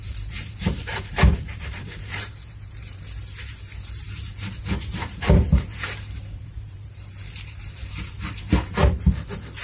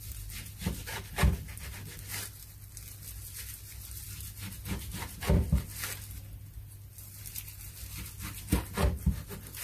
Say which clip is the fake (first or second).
first